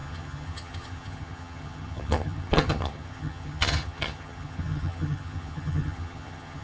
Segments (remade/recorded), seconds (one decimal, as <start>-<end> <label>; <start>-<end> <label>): 0.0-6.6 remade